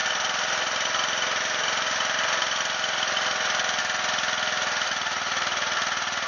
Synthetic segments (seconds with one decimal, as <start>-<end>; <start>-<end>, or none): none